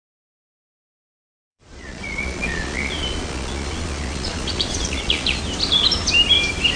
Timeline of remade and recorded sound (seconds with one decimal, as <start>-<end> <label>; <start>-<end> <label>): 0.0-1.5 recorded; 1.5-5.4 remade; 5.4-6.8 recorded